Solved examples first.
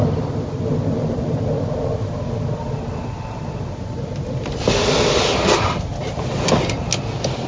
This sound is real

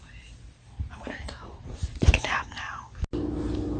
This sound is real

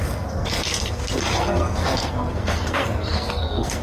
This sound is fake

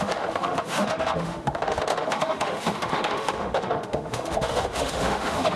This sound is fake